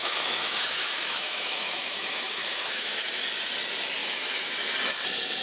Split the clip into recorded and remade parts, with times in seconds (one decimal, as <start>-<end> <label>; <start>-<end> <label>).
0.0-3.1 remade; 3.1-4.0 recorded; 4.0-4.5 remade; 4.5-5.4 recorded